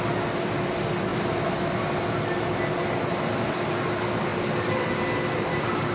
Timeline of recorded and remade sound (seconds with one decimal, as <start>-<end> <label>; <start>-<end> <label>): 0.0-5.9 recorded